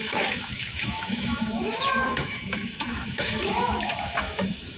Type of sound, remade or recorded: remade